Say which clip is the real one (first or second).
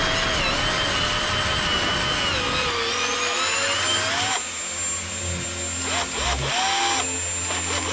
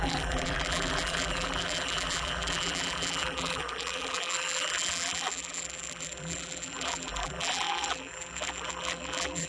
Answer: first